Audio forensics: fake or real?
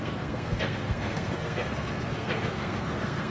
fake